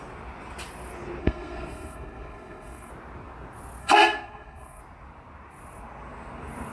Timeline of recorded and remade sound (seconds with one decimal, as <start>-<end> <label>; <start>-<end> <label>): 0.0-1.2 recorded; 1.2-2.9 remade; 2.9-3.8 recorded; 3.8-4.8 remade; 4.8-6.7 recorded